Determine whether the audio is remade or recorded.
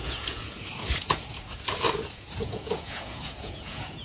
remade